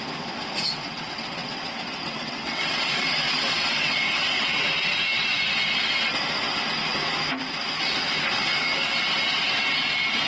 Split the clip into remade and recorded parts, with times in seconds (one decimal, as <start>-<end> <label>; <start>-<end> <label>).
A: 0.0-0.8 recorded; 0.8-4.6 remade; 4.6-10.3 recorded